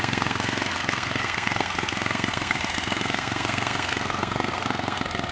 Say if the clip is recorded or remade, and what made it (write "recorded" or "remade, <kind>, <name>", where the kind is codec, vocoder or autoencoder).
remade, codec, SNAC